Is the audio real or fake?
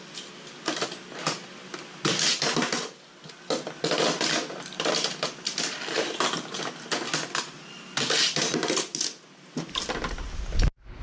real